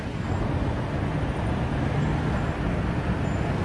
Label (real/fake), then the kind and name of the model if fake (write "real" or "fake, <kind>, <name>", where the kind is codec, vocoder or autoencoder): real